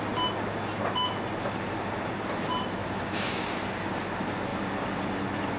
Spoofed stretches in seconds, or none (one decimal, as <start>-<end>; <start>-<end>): 2.8-3.6